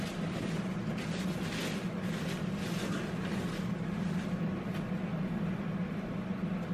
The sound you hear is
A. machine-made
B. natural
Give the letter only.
B